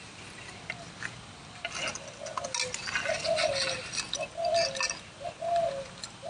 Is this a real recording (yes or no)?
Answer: yes